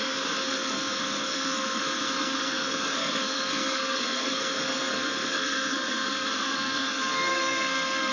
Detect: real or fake fake